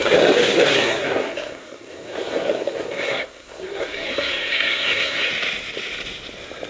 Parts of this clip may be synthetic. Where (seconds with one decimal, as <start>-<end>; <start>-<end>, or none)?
0.0-5.3